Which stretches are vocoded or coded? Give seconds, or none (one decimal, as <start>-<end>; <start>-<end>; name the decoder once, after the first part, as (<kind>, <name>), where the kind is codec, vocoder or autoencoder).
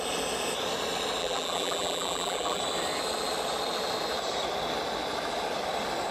1.2-2.6 (vocoder, BigVGAN v2)